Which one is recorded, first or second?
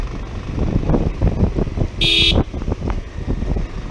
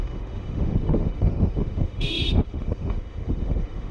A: first